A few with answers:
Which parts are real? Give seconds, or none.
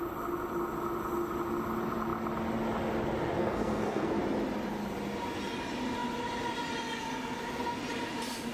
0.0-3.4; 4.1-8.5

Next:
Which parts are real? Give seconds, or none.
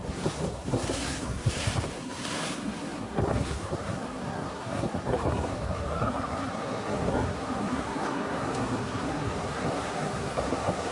none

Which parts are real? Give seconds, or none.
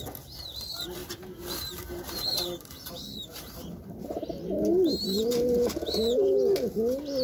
0.0-1.0; 5.3-7.2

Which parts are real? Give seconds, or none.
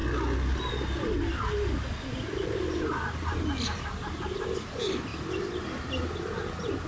0.0-6.9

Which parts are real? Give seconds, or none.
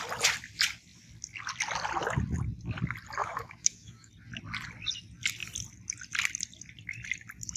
0.0-3.2; 4.1-7.6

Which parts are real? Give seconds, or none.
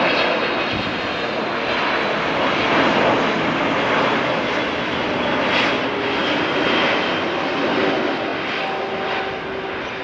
0.0-10.0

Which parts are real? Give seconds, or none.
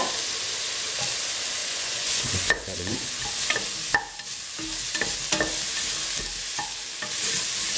0.0-1.6; 3.1-7.8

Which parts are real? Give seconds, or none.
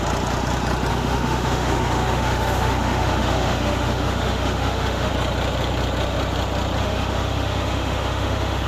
0.0-0.9; 5.1-6.8